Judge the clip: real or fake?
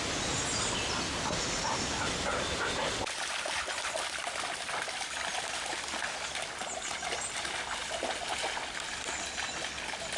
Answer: real